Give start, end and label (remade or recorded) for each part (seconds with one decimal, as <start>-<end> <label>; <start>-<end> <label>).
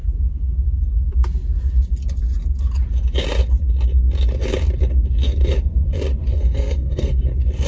0.0-6.3 recorded; 6.3-7.2 remade; 7.2-7.7 recorded